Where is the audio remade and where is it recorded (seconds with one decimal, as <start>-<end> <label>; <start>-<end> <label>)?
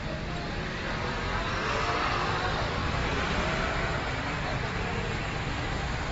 0.0-3.0 recorded; 3.0-4.6 remade; 4.6-6.1 recorded